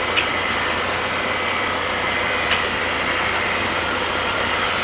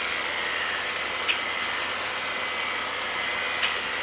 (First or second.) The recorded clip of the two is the second